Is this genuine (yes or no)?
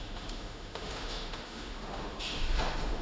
no